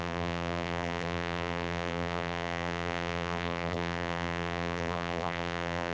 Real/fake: fake